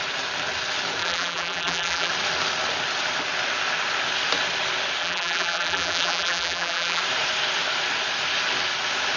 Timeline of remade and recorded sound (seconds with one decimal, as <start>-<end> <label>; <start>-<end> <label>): 0.0-1.0 recorded; 1.0-2.1 remade; 2.1-5.0 recorded; 5.0-7.0 remade; 7.0-9.2 recorded

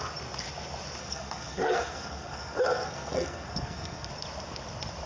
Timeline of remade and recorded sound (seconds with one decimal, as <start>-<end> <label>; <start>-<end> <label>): 0.0-1.0 recorded; 1.0-4.1 remade; 4.1-5.1 recorded

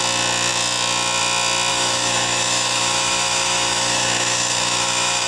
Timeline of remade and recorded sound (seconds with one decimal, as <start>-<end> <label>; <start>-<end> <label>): 0.0-1.7 recorded; 1.7-5.3 remade

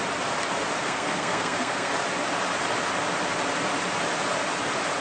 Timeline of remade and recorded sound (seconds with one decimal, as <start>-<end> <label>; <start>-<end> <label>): 0.0-0.8 recorded; 0.8-1.9 remade; 1.9-5.0 recorded

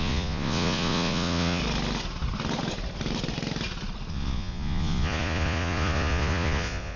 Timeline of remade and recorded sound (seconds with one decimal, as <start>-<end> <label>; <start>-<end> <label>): 0.0-1.6 remade; 1.6-4.1 recorded; 4.1-7.0 remade